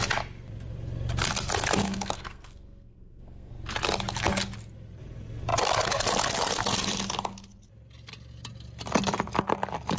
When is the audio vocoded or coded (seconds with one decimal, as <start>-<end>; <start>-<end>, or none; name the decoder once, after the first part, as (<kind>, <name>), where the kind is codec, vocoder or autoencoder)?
1.8-3.5 (codec, SNAC)